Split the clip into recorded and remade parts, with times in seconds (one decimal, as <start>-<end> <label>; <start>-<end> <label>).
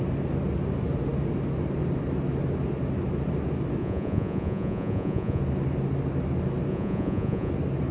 0.0-3.8 recorded; 3.8-5.4 remade; 5.4-6.7 recorded; 6.7-7.5 remade; 7.5-7.9 recorded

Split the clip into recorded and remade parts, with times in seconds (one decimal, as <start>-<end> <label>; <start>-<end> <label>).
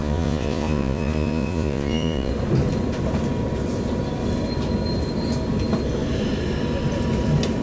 0.0-2.3 remade; 2.3-7.6 recorded